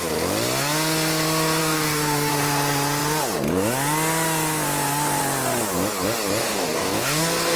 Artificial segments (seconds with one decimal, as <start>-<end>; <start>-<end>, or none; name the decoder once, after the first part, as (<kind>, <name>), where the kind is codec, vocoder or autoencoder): 1.6-2.3 (codec, DAC); 6.4-7.6